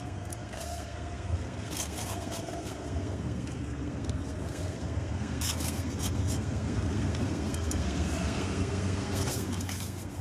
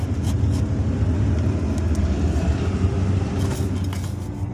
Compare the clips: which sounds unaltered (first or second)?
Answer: second